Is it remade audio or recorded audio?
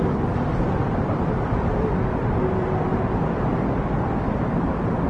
recorded